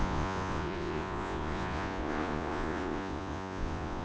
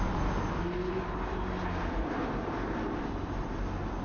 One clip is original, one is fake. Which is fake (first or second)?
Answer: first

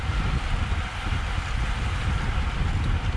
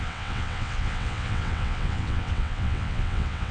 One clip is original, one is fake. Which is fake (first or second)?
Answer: second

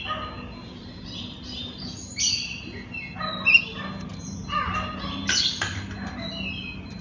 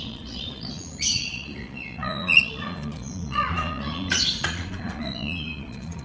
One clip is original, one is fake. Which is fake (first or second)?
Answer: second